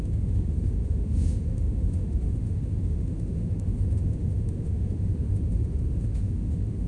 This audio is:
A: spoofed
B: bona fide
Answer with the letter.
A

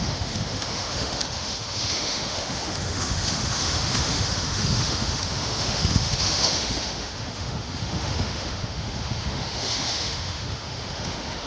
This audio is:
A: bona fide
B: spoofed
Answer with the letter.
B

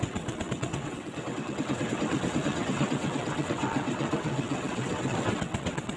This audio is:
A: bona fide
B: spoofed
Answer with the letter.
B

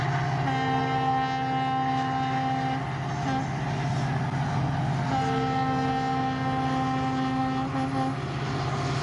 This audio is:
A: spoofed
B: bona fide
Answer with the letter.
B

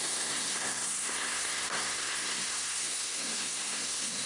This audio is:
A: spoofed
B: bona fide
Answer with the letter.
A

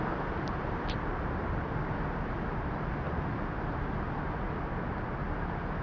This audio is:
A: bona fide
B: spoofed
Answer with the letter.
A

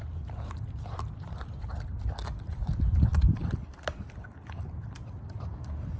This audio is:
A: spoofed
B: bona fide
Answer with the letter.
A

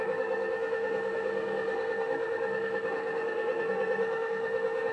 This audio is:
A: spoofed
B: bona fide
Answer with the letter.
A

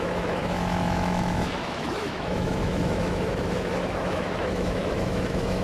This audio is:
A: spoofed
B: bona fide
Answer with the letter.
A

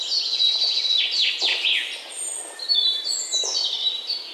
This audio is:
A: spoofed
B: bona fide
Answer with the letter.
B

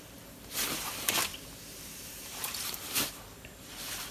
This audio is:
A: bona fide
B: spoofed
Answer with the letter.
B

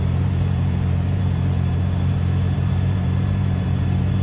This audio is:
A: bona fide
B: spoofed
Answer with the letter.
B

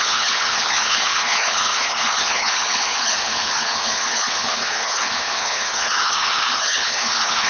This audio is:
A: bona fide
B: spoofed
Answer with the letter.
B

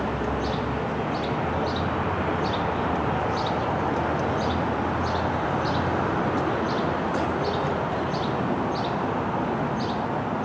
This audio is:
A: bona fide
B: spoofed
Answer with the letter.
A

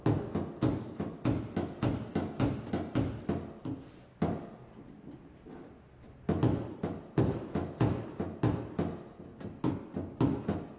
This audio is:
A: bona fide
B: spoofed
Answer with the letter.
A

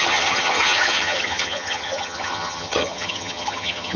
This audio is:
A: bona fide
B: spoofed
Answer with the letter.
B